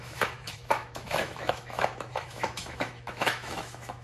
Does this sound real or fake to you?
fake